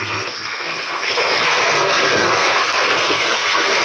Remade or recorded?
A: remade